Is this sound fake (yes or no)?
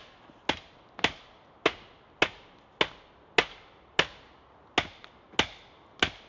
no